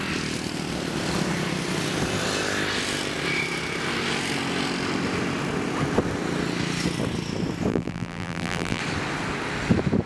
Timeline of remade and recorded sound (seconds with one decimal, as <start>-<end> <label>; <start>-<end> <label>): 0.0-7.7 recorded; 7.7-8.8 remade; 8.8-10.1 recorded